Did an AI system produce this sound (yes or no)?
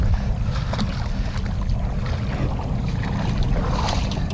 no